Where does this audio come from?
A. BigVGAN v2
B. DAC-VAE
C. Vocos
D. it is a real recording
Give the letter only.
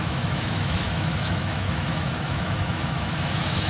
B